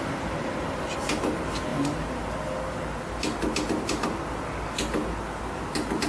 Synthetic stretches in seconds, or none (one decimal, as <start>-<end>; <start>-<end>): none